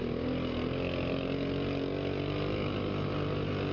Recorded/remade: recorded